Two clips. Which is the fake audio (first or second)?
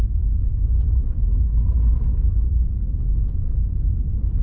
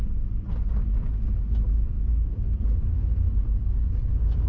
first